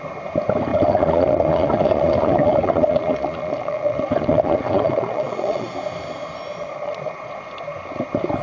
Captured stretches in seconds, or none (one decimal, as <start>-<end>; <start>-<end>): 0.0-0.7; 5.7-6.5; 7.3-8.4